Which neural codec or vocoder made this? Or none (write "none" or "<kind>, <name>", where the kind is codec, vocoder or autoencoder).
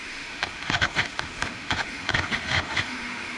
autoencoder, DAC-VAE